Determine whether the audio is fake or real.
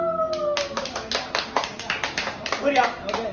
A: real